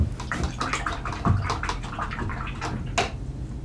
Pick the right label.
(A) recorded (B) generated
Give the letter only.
A